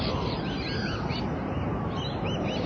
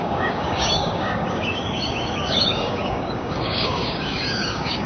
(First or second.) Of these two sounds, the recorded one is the first